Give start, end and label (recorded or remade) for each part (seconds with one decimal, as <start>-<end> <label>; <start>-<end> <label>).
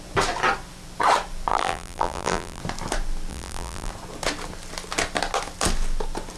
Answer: 0.0-1.5 recorded; 1.5-2.6 remade; 2.6-3.3 recorded; 3.3-3.9 remade; 3.9-6.4 recorded